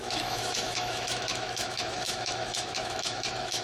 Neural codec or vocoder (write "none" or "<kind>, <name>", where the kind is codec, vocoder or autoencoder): autoencoder, DAC-VAE